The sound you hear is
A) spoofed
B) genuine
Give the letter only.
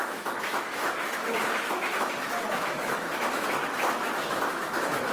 A